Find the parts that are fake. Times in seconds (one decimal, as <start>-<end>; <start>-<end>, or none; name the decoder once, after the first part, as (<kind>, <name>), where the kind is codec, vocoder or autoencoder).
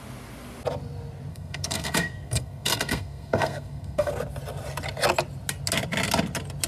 1.3-4.1 (codec, SNAC)